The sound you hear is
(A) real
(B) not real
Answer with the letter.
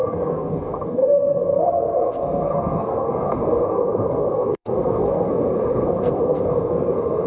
B